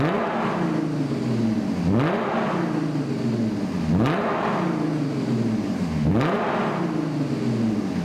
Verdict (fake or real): real